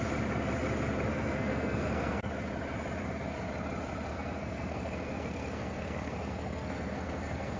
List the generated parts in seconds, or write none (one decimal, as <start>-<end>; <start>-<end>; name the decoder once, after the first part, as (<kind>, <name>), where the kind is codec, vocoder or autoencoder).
1.1-2.3 (codec, SNAC); 3.0-3.5; 4.1-7.6